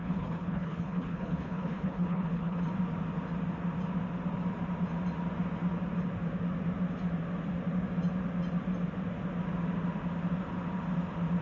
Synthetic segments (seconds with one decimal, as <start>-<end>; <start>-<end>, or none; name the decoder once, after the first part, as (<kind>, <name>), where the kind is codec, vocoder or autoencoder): 0.0-2.6 (codec, HILCodec)